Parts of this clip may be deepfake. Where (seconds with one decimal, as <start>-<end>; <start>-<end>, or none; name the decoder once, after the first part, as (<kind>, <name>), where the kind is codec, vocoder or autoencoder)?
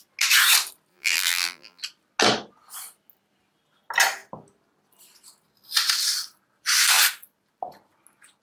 0.9-1.8 (vocoder, BigVGAN v2)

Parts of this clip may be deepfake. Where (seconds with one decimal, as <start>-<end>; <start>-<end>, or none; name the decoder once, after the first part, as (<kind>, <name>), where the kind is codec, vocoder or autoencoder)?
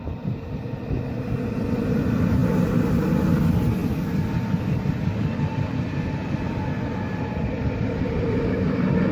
none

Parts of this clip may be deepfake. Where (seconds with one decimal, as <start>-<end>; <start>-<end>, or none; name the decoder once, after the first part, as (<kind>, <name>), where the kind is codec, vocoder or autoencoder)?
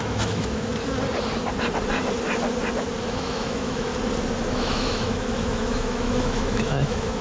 0.0-0.7 (autoencoder, DAC-VAE); 3.1-3.9; 4.5-7.2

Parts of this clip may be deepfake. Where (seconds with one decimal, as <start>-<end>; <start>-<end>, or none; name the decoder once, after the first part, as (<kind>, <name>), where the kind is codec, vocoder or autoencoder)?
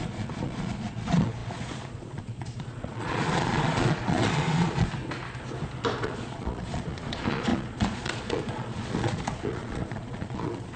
0.0-4.9 (vocoder, Vocos); 6.0-10.8